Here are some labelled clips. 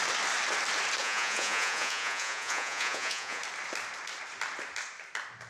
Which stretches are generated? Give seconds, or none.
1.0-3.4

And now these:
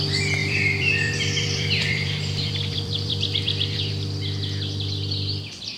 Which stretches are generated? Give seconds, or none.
0.4-3.9

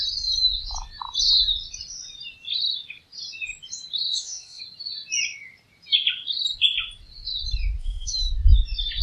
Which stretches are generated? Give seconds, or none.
4.1-4.6; 7.8-8.3

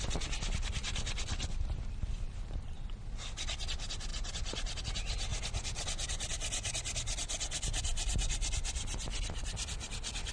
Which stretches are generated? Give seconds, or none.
4.1-4.8